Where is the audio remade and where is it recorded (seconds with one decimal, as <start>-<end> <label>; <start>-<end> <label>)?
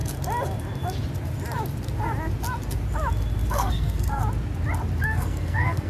0.0-3.5 recorded; 3.5-4.2 remade; 4.2-5.0 recorded; 5.0-5.9 remade